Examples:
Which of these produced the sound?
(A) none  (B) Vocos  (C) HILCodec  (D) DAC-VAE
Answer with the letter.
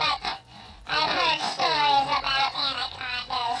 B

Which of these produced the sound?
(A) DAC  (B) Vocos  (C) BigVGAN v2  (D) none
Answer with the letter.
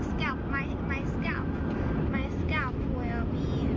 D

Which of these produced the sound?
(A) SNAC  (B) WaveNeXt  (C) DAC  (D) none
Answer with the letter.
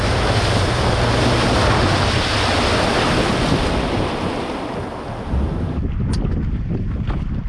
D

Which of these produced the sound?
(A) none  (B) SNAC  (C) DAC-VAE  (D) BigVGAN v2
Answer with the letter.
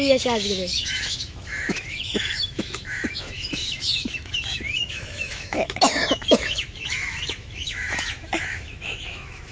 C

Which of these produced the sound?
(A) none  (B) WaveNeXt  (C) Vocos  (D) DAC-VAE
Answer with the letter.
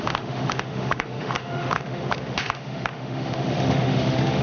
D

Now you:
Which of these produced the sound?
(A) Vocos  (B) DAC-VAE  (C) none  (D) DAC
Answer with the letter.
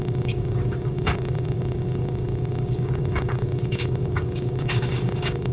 D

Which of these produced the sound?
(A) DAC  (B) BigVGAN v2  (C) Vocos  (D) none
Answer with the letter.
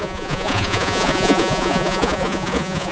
C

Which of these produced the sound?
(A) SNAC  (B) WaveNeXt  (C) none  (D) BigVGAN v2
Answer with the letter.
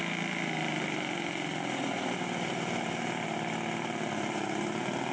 C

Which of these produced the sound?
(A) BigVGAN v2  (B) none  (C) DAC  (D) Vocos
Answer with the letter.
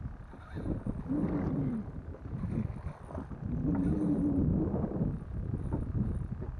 B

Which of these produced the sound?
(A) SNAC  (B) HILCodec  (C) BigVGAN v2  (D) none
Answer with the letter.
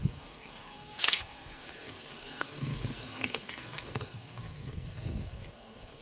A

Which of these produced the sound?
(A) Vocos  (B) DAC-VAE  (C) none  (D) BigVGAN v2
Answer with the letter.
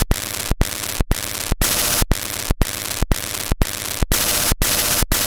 C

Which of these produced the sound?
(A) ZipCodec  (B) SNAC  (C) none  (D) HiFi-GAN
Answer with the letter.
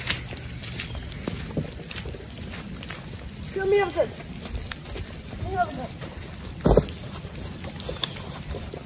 C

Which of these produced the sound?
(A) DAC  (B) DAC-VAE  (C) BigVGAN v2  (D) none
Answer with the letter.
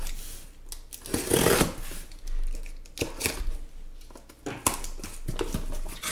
D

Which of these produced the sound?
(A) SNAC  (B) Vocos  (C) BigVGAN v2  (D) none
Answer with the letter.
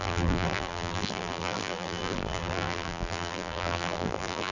C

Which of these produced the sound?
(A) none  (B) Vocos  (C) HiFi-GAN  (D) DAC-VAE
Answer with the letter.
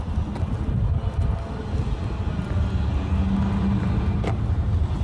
A